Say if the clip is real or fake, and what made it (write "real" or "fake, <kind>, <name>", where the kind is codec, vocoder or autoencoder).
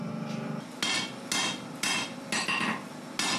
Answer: real